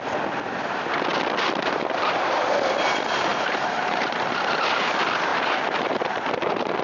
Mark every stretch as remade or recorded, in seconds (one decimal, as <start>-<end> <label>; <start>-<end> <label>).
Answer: 0.0-3.3 recorded; 3.3-4.5 remade; 4.5-5.3 recorded; 5.3-6.8 remade

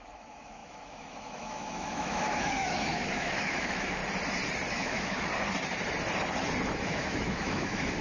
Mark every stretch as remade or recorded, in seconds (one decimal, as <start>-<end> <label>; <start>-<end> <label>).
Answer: 0.0-4.0 remade; 4.0-4.7 recorded; 4.7-5.3 remade; 5.3-6.8 recorded; 6.8-8.0 remade

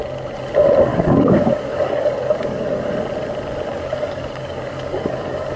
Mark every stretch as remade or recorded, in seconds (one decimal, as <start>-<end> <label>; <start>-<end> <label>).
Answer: 0.0-0.9 recorded; 0.9-2.9 remade; 2.9-3.7 recorded; 3.7-5.6 remade

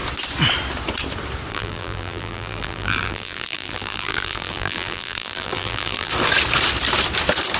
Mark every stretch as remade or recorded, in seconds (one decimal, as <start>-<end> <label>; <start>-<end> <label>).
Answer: 0.0-1.5 recorded; 1.5-6.1 remade; 6.1-7.6 recorded

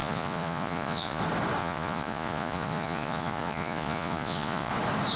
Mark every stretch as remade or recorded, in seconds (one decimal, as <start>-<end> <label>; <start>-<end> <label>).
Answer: 0.0-1.2 remade; 1.2-1.6 recorded; 1.6-4.7 remade; 4.7-5.2 recorded

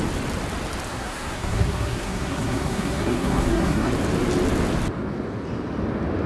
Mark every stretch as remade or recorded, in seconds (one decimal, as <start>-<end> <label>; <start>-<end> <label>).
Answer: 0.0-0.9 recorded; 0.9-3.9 remade; 3.9-6.3 recorded